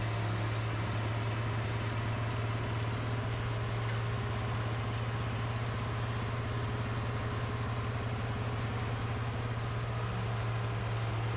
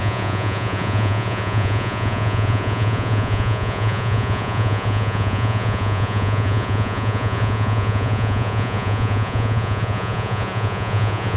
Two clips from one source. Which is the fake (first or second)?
second